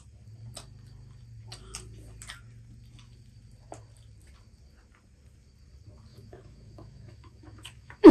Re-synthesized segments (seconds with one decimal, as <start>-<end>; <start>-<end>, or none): 6.1-8.1